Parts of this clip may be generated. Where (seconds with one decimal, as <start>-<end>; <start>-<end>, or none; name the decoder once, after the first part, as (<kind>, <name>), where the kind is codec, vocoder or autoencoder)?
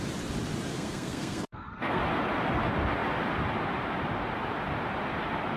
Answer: 0.7-2.0 (codec, SNAC)